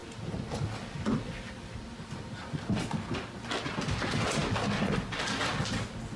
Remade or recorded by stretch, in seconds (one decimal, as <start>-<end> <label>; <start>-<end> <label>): 0.0-6.2 recorded